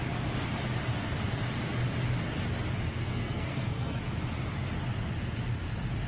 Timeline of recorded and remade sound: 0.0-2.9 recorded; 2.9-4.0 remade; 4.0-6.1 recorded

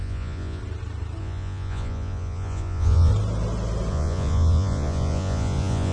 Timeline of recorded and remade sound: 0.0-0.6 remade; 0.6-1.2 recorded; 1.2-3.1 remade; 3.1-3.9 recorded; 3.9-5.9 remade

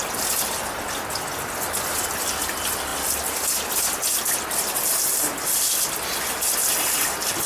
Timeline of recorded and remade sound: 0.0-7.5 recorded

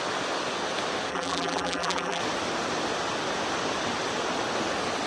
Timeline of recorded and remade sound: 0.0-1.1 recorded; 1.1-2.2 remade; 2.2-5.1 recorded

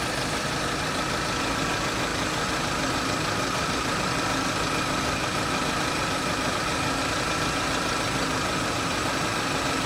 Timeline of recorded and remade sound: 0.0-9.9 recorded

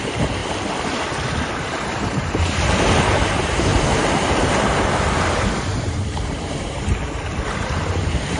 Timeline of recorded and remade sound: 0.0-0.4 remade; 0.4-1.3 recorded; 1.3-3.7 remade; 3.7-5.8 recorded; 5.8-8.4 remade